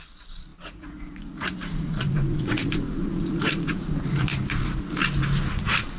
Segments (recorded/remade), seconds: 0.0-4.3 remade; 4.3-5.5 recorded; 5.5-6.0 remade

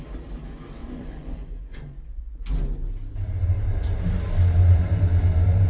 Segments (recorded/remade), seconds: 0.0-0.8 recorded; 0.8-2.4 remade; 2.4-5.7 recorded

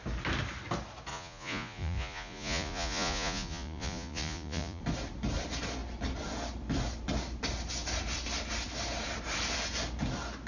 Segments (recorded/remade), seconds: 0.0-1.1 recorded; 1.1-4.8 remade; 4.8-10.5 recorded

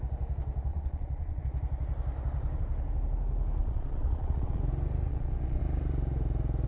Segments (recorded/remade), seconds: 0.0-0.7 recorded; 0.7-1.4 remade; 1.4-3.6 recorded; 3.6-4.6 remade; 4.6-5.1 recorded; 5.1-5.6 remade; 5.6-6.7 recorded

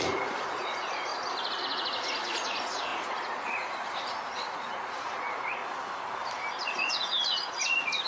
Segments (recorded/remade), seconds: 0.0-1.1 remade; 1.1-1.6 recorded; 1.6-5.6 remade; 5.6-6.6 recorded; 6.6-8.1 remade

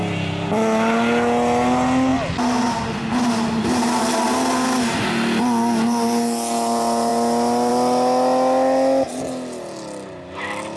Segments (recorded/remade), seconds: 0.0-10.8 recorded

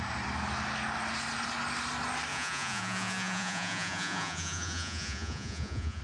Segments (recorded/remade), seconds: 0.0-2.3 recorded; 2.3-6.0 remade

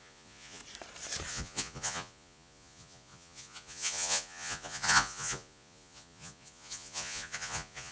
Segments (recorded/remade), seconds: 0.0-0.6 remade; 0.6-1.3 recorded; 1.3-7.9 remade